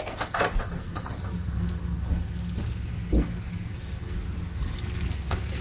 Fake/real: fake